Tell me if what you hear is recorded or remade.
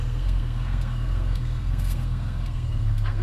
remade